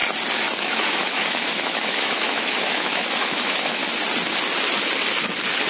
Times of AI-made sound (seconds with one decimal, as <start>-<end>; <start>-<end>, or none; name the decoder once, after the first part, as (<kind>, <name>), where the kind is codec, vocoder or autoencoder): 0.6-3.8 (autoencoder, DAC-VAE)